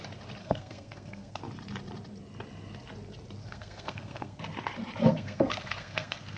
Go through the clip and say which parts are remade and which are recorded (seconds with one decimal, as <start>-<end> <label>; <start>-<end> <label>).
0.0-0.4 recorded; 0.4-1.4 remade; 1.4-3.4 recorded; 3.4-4.4 remade; 4.4-5.0 recorded; 5.0-6.4 remade